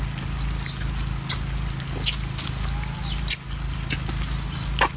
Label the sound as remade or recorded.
recorded